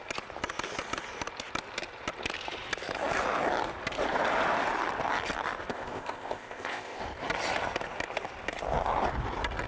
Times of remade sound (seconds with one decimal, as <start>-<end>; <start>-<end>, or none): 5.7-7.0